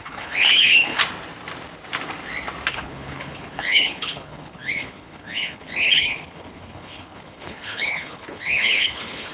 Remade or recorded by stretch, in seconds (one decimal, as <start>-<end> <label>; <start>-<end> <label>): 0.0-1.0 remade; 1.0-2.7 recorded; 2.7-9.3 remade